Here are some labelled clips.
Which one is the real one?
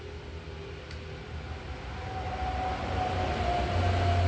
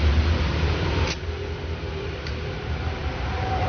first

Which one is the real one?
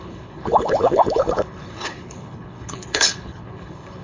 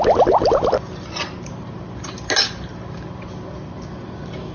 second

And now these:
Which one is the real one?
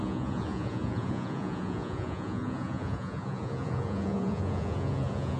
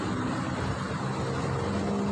second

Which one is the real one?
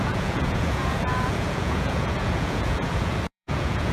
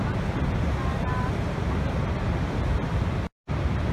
second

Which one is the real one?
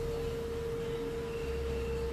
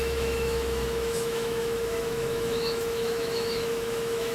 first